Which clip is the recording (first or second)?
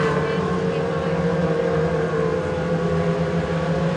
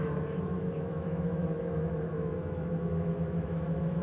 first